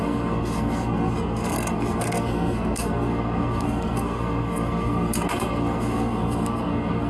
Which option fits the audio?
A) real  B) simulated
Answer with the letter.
B